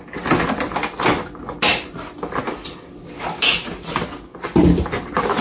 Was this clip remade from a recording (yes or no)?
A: no